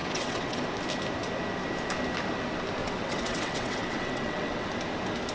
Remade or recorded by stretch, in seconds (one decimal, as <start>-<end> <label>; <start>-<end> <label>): 0.0-0.6 remade; 0.6-2.8 recorded; 2.8-4.7 remade; 4.7-5.3 recorded